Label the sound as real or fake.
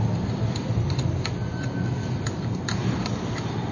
fake